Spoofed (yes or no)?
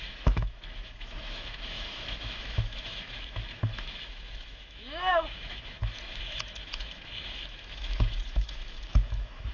yes